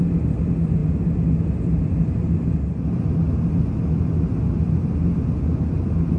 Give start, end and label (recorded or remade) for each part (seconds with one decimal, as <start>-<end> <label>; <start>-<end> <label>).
0.0-6.2 recorded